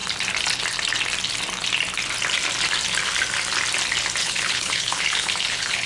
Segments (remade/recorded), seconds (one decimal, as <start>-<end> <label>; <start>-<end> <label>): 0.0-4.2 recorded; 4.2-5.9 remade